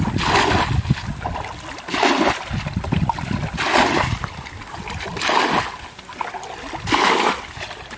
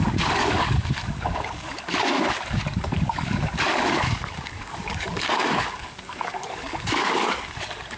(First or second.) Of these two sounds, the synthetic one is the second